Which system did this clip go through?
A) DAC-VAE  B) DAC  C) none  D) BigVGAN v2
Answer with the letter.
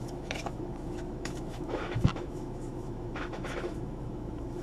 A